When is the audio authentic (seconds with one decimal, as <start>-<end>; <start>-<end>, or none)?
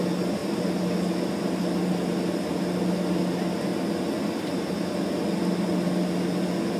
0.0-6.8